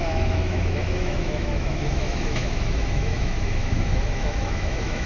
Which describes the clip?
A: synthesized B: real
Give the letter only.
A